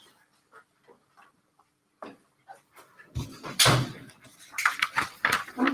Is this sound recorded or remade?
remade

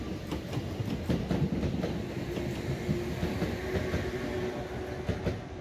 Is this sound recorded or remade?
recorded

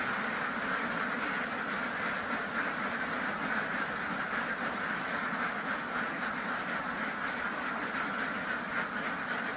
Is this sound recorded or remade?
recorded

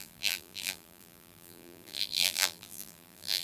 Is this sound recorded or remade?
remade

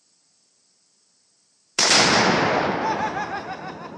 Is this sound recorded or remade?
recorded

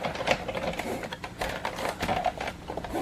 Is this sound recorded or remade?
remade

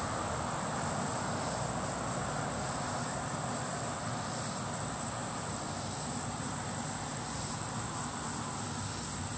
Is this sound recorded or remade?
remade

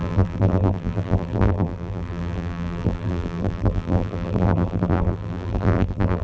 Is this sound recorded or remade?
remade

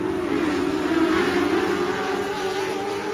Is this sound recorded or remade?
recorded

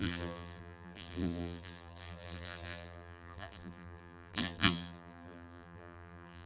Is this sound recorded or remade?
remade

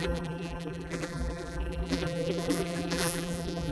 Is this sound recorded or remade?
remade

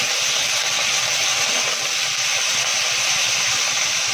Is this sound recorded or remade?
recorded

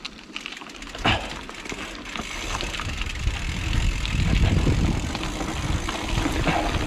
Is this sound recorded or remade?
recorded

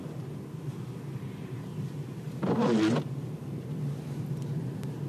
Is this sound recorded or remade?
recorded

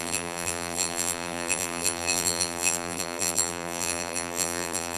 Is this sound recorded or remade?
remade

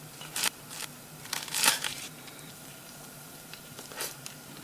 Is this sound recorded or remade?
remade